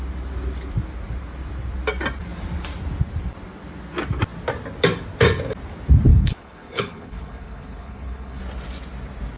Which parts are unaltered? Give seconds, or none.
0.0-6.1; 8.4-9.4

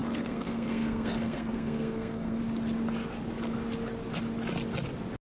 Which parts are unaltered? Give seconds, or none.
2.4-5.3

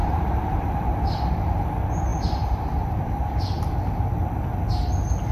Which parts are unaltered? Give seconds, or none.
1.3-2.1; 3.7-5.3